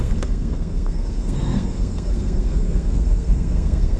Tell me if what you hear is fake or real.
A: fake